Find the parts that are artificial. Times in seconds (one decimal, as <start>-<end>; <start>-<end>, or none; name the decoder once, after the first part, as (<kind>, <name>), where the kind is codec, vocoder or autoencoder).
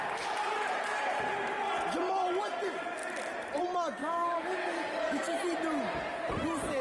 4.0-5.4 (codec, DAC)